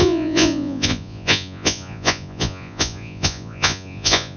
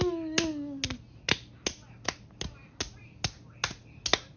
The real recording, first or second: second